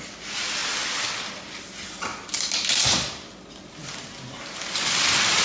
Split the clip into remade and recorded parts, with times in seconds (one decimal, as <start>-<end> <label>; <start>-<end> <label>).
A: 0.0-5.4 recorded